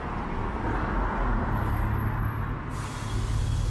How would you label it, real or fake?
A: real